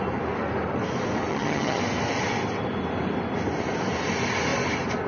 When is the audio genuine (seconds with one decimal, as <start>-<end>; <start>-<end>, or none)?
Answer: 0.0-1.3; 1.8-5.1